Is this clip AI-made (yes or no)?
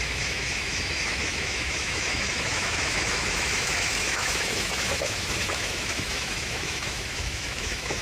yes